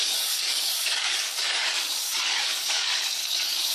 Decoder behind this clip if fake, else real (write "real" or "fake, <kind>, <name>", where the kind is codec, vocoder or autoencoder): fake, codec, DAC